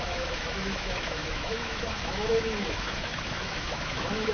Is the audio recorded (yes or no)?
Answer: no